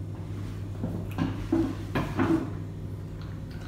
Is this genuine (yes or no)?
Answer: yes